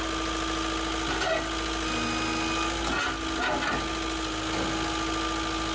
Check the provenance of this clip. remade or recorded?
recorded